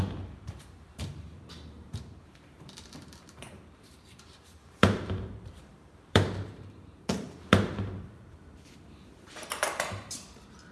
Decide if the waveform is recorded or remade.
remade